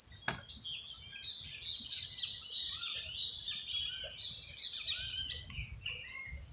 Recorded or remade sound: recorded